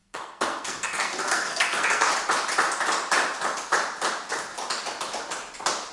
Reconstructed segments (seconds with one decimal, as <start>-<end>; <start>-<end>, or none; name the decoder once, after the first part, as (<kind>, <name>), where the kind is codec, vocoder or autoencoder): 0.0-2.1 (codec, SNAC)